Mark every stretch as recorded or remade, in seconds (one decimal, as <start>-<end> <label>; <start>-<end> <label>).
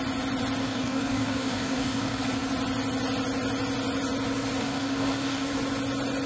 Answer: 0.0-0.6 recorded; 0.6-2.2 remade; 2.2-4.6 recorded; 4.6-5.5 remade; 5.5-6.3 recorded